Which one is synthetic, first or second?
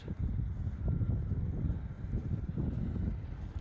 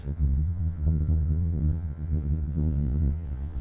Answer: second